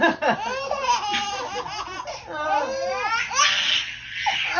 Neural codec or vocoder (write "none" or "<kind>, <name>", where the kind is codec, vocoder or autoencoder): none